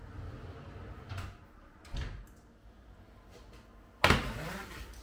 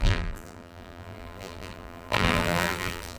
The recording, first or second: first